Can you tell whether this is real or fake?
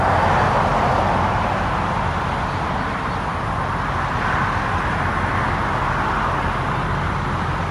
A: real